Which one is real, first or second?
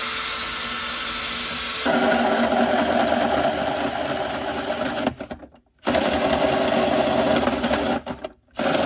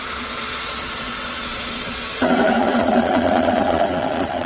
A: first